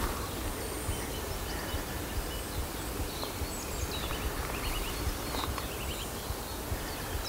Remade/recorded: recorded